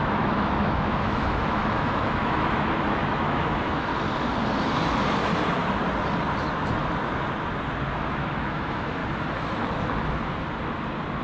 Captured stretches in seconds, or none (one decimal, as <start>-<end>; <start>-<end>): 3.9-8.1; 9.0-11.2